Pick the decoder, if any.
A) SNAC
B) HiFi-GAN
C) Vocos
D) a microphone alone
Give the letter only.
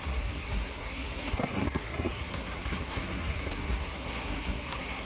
A